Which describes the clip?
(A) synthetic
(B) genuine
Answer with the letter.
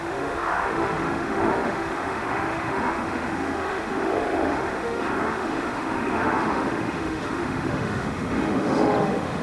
A